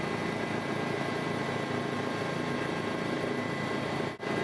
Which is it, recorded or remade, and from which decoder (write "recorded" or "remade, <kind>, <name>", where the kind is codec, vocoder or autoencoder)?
recorded